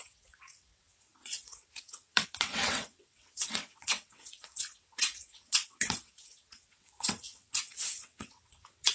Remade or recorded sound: remade